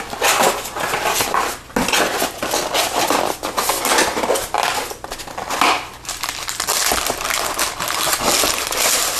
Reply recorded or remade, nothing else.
recorded